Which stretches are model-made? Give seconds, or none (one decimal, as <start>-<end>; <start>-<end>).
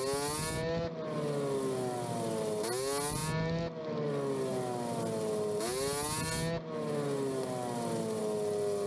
none